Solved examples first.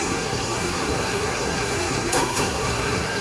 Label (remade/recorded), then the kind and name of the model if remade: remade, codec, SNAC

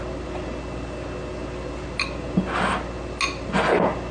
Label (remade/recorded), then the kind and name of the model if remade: recorded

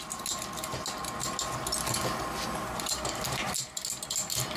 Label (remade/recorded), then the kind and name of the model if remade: recorded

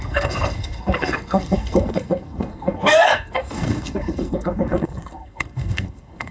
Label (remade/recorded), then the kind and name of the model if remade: remade, codec, SNAC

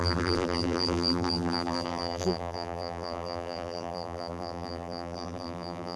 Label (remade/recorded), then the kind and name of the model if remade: remade, vocoder, BigVGAN v2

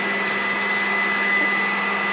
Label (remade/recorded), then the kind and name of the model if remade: recorded